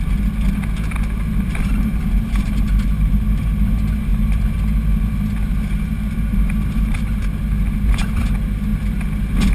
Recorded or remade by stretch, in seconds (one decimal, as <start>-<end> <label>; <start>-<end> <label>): 0.0-9.5 recorded